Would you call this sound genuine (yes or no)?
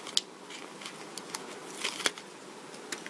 yes